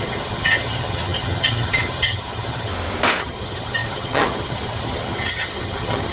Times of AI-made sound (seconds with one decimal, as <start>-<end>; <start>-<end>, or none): 0.0-2.7; 3.2-6.1

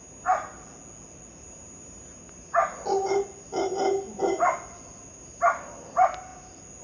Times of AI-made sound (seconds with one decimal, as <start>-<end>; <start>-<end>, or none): none

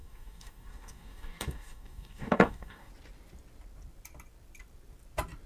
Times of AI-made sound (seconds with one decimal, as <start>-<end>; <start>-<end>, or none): 0.0-2.9

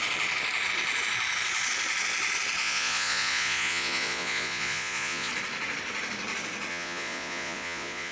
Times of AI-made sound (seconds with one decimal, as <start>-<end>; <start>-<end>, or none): 2.6-5.3; 6.7-8.1

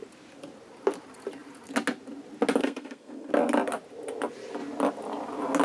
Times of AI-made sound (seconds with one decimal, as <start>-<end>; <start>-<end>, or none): 2.6-3.3

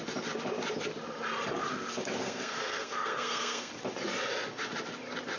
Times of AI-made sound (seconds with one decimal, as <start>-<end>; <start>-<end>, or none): 2.2-3.7